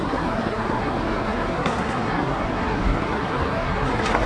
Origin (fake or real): fake